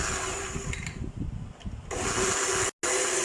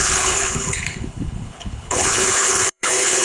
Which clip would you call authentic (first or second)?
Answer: first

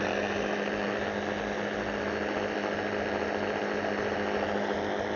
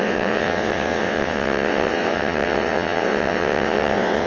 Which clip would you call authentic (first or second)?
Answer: first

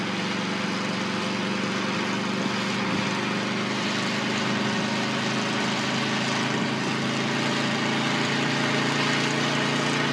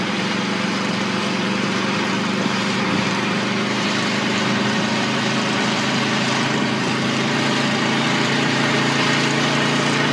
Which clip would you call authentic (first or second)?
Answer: first